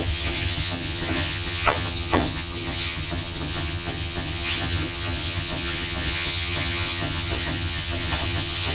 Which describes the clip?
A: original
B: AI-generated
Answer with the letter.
B